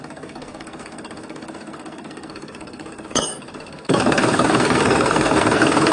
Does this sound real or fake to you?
fake